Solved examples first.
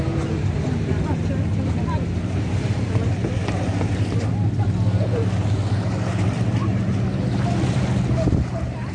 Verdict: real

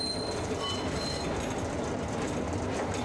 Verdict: real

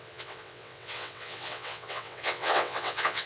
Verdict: fake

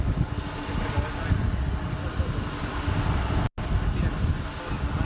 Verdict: real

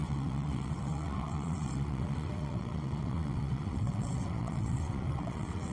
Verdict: fake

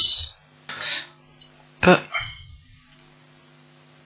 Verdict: real